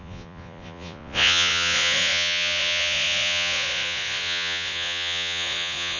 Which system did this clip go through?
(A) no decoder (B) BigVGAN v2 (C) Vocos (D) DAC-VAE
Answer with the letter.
C